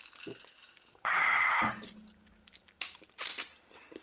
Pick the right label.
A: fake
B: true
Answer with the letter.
B